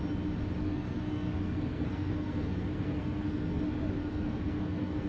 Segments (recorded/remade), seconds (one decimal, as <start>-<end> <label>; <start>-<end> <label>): 0.0-0.6 recorded; 0.6-3.6 remade; 3.6-4.0 recorded; 4.0-5.1 remade